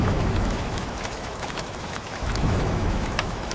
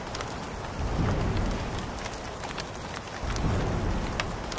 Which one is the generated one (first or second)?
first